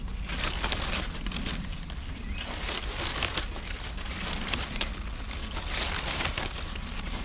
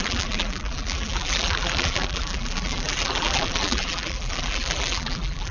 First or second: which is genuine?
first